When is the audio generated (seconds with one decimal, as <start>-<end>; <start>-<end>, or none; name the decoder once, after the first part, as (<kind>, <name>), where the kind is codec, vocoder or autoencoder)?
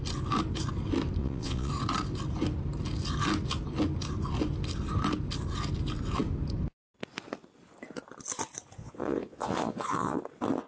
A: 1.2-1.7 (vocoder, Vocos); 8.8-10.2